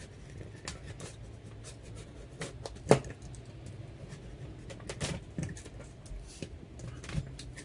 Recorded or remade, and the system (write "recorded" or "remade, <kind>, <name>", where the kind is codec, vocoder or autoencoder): recorded